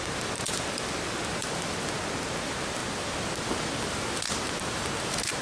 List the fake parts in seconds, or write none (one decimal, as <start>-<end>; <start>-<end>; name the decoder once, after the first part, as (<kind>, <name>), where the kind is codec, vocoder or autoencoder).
none